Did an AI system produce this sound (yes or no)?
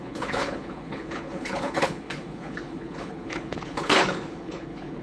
yes